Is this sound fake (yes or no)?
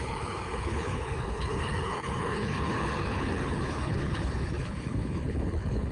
yes